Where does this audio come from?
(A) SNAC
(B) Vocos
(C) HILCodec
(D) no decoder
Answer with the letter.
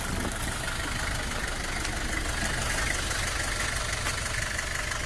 D